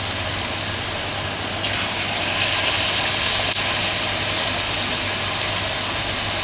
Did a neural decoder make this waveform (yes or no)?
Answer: no